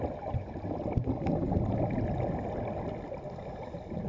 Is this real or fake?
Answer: real